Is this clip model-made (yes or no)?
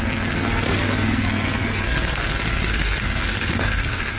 yes